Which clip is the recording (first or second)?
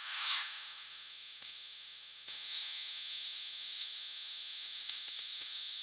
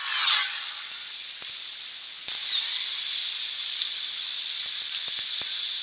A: second